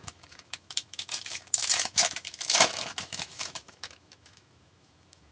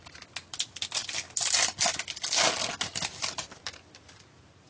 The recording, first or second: second